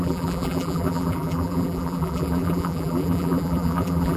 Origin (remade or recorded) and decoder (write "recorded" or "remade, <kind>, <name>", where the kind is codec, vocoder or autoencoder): remade, vocoder, BigVGAN v2